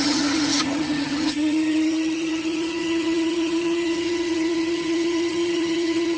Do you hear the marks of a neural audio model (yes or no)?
yes